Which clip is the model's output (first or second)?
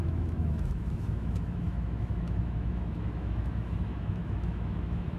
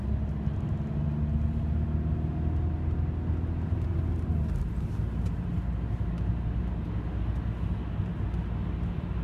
first